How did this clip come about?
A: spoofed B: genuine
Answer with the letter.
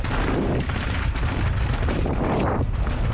B